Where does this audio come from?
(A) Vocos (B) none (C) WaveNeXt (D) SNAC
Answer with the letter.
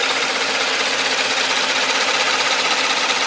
B